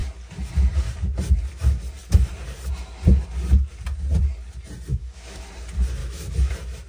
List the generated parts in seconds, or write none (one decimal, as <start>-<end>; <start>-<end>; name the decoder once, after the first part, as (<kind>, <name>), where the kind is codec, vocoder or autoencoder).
4.9-5.5 (autoencoder, DAC-VAE); 6.0-6.5